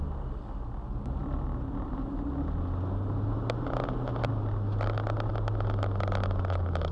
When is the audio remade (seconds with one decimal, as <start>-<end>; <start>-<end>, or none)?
none